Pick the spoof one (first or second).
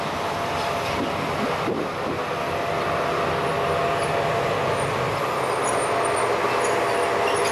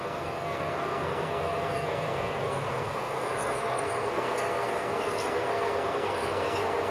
second